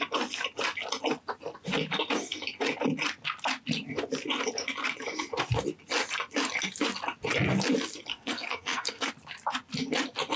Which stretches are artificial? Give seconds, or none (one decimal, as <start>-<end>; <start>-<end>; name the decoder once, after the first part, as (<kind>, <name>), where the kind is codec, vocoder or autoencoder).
8.1-9.1 (codec, SNAC)